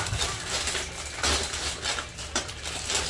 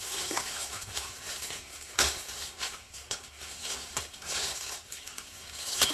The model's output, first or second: second